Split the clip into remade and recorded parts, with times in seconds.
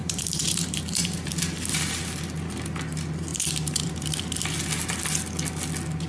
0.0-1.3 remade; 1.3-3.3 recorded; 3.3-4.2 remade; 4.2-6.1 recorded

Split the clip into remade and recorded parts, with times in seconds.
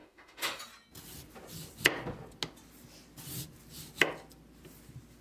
0.0-0.6 remade; 0.6-5.2 recorded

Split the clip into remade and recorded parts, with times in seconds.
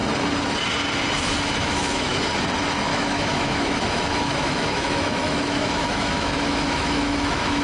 0.0-1.6 recorded; 1.6-2.2 remade; 2.2-2.9 recorded; 2.9-7.6 remade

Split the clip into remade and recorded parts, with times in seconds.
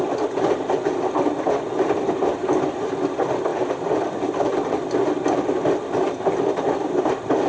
0.0-7.5 recorded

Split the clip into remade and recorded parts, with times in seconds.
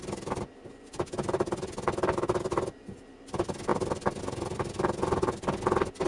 0.0-6.1 recorded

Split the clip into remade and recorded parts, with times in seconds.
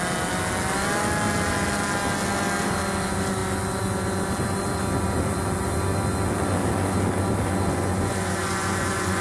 0.0-7.7 recorded; 7.7-9.2 remade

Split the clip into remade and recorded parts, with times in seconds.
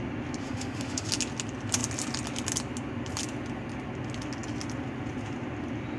0.0-0.4 recorded; 0.4-1.1 remade; 1.1-6.0 recorded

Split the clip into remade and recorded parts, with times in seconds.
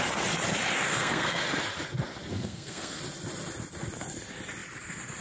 0.0-0.9 recorded; 0.9-1.4 remade; 1.4-2.3 recorded; 2.3-3.0 remade; 3.0-5.2 recorded